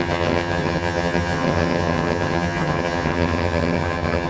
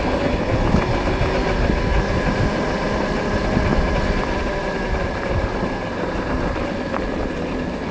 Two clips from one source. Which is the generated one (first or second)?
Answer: first